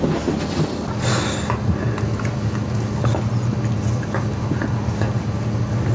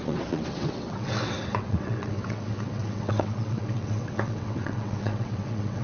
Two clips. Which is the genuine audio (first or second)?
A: first